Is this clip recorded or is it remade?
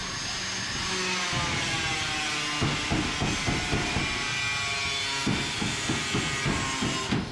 recorded